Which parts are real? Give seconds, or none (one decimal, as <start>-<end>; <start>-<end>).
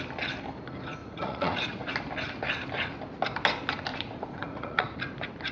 0.0-1.0; 1.9-3.9; 5.0-5.5